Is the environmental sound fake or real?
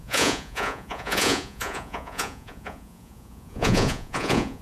fake